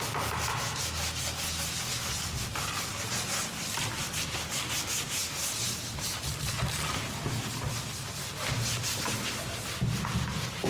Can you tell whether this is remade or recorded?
recorded